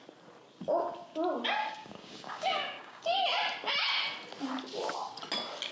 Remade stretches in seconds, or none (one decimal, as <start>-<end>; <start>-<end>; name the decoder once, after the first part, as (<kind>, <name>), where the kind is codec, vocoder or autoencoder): 1.6-3.0 (codec, DAC)